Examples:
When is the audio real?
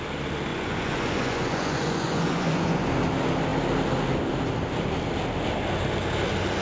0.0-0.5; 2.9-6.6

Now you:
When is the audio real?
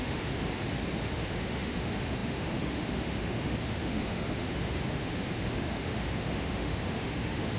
0.5-1.1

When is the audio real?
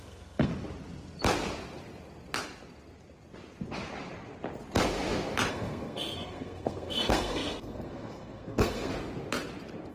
0.5-5.5; 8.9-9.9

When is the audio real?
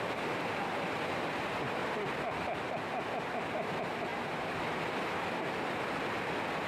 0.0-6.7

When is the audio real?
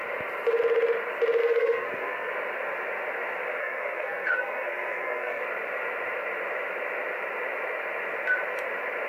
0.0-1.4; 2.3-3.6; 5.4-9.1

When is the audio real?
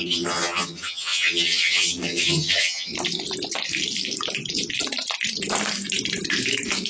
2.9-6.9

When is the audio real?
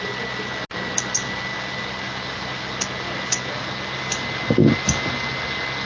0.0-5.9